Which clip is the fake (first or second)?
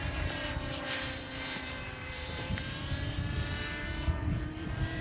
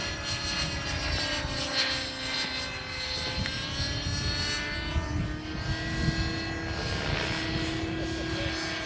first